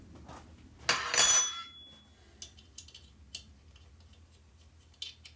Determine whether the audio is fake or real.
real